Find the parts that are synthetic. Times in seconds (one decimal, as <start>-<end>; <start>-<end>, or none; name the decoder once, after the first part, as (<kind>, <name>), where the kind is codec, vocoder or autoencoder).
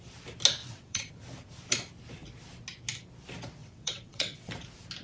0.6-1.1 (vocoder, WaveNeXt); 3.6-4.5